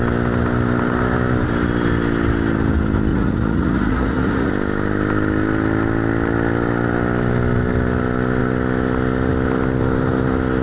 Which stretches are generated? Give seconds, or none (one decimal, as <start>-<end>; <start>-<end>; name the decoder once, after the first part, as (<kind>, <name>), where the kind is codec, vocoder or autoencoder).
3.1-4.5 (vocoder, Vocos)